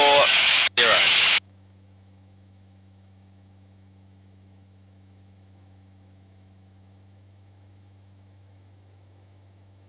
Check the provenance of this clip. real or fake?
fake